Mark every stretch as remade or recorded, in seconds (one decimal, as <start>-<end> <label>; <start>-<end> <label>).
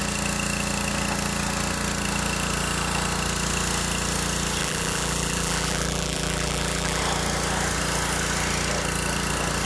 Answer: 0.0-4.6 recorded; 4.6-7.0 remade; 7.0-9.7 recorded